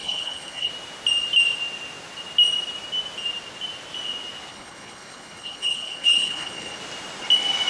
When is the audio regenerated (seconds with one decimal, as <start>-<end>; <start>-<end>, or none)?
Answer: 0.0-0.7; 4.5-6.8